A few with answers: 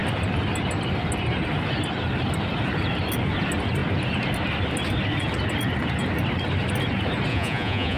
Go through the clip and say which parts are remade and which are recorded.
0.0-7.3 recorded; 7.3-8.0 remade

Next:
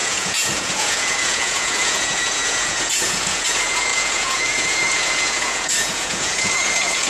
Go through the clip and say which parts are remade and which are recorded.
0.0-7.1 remade